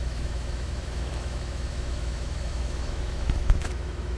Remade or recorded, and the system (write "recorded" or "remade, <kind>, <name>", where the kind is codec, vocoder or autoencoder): remade, autoencoder, DAC-VAE